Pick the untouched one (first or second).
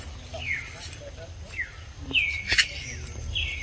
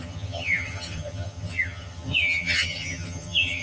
first